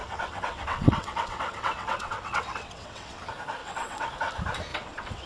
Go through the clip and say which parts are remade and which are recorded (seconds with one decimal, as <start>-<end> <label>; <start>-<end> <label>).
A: 0.0-3.2 remade; 3.2-3.6 recorded; 3.6-4.1 remade; 4.1-4.7 recorded; 4.7-5.3 remade